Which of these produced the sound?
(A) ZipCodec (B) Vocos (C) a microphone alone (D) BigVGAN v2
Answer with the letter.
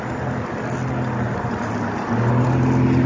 C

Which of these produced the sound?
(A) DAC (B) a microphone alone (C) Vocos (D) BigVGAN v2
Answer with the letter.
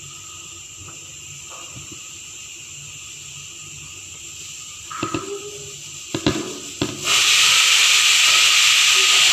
D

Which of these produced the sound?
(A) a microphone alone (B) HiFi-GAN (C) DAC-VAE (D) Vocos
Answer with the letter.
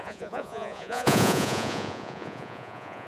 D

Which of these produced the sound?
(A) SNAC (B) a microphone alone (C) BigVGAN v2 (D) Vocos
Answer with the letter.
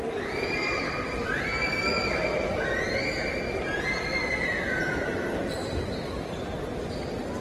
B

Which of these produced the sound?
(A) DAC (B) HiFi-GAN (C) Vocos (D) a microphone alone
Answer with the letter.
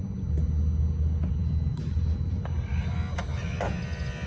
D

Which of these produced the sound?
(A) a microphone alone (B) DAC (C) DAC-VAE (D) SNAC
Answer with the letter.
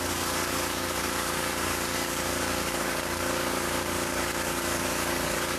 B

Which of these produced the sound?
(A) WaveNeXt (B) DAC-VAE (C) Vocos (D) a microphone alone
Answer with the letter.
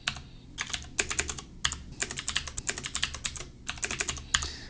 D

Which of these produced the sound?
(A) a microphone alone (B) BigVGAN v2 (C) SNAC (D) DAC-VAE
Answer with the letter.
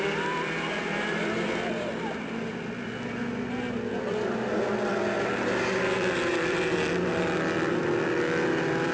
B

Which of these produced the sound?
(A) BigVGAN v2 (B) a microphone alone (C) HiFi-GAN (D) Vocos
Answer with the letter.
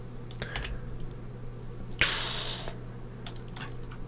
B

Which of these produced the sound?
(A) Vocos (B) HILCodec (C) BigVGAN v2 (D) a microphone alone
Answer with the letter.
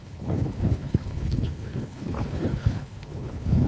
B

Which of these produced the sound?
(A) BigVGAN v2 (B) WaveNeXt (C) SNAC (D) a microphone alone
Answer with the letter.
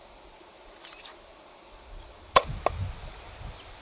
D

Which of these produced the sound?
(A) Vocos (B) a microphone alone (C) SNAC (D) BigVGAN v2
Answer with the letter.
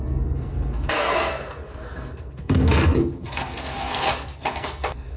C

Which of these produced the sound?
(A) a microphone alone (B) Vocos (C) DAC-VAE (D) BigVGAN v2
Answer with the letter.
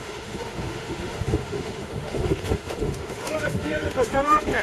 C